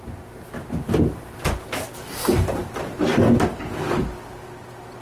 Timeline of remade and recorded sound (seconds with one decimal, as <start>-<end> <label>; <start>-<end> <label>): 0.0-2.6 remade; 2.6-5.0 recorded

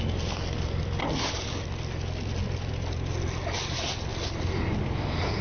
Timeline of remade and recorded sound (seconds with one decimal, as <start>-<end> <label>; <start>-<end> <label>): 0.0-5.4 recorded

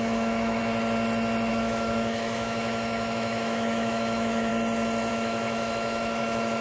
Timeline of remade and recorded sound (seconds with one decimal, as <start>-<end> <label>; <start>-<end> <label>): 0.0-0.6 remade; 0.6-1.5 recorded; 1.5-4.5 remade; 4.5-5.1 recorded; 5.1-6.6 remade

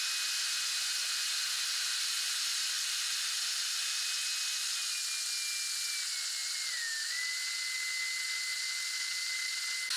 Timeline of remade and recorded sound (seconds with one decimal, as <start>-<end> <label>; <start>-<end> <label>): 0.0-0.9 recorded; 0.9-4.1 remade; 4.1-6.4 recorded; 6.4-7.2 remade; 7.2-8.5 recorded; 8.5-9.6 remade; 9.6-10.0 recorded

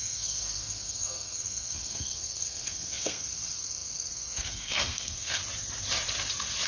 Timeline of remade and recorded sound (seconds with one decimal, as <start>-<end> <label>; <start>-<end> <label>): 0.0-5.4 remade; 5.4-6.7 recorded